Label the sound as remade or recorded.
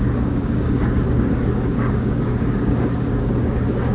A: remade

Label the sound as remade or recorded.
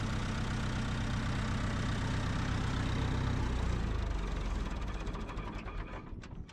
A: recorded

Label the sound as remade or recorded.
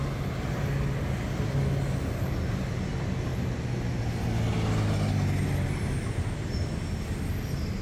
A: recorded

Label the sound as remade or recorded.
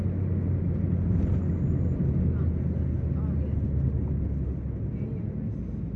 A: recorded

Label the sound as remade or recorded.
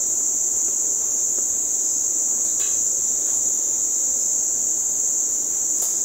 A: recorded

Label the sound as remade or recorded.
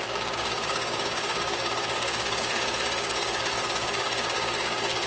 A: remade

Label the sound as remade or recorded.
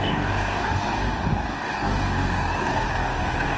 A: remade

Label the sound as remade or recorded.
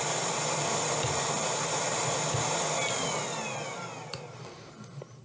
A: recorded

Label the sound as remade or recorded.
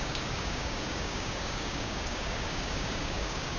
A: remade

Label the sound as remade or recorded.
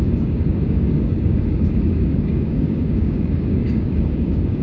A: remade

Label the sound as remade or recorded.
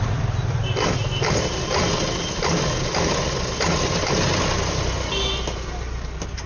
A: recorded